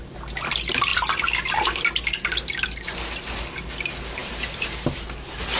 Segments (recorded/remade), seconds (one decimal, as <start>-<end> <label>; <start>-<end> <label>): 0.0-5.6 recorded